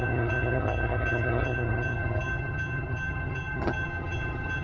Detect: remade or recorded remade